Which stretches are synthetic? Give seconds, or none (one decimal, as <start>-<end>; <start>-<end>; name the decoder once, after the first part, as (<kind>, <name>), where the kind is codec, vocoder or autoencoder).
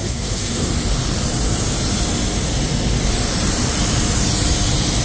0.0-0.7 (codec, SNAC)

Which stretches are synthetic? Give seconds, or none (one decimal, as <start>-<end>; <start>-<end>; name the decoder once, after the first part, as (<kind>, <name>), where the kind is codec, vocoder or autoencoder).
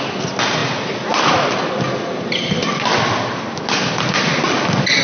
none